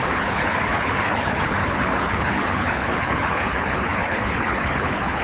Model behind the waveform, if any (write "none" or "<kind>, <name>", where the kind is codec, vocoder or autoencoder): codec, HILCodec